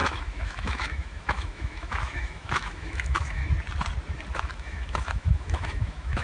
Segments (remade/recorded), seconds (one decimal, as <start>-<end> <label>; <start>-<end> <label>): 0.0-3.4 remade; 3.4-4.3 recorded; 4.3-6.2 remade